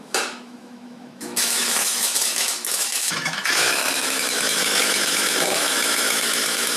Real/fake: fake